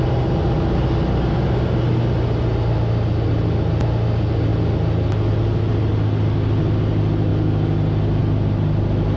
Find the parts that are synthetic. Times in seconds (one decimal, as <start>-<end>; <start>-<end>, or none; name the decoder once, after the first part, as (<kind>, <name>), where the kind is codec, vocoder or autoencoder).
none